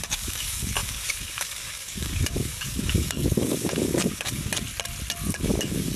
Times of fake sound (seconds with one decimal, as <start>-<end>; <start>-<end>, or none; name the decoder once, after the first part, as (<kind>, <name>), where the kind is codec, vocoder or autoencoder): 0.0-4.5 (codec, DAC); 5.3-6.0